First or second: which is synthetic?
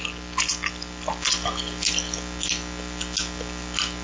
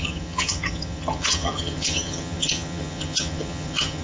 second